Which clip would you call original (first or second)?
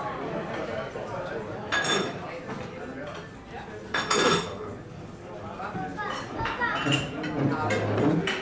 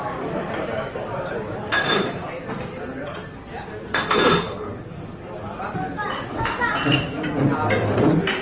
first